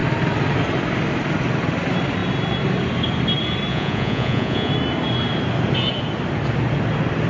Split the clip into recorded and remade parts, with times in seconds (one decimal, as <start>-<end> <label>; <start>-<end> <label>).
0.0-3.7 recorded; 3.7-4.7 remade; 4.7-7.3 recorded